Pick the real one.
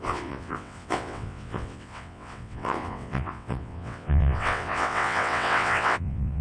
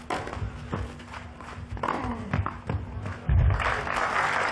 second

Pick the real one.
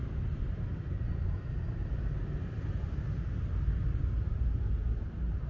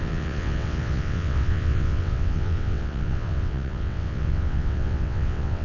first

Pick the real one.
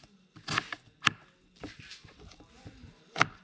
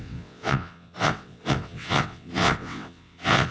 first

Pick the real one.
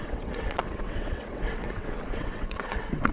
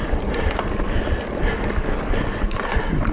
second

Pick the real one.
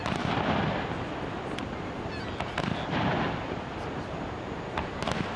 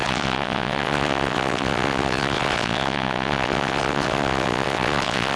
first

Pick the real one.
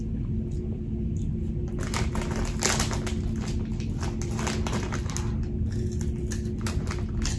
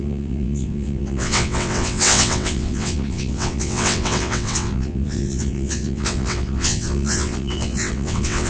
first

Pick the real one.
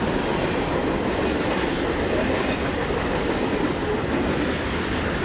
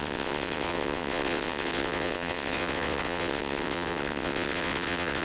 first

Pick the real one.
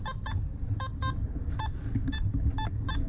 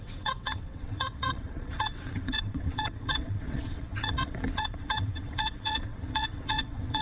first